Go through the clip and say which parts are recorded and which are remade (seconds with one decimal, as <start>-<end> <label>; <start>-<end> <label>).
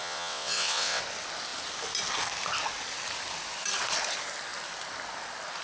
0.0-1.0 remade; 1.0-5.6 recorded